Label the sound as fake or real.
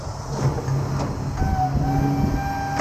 real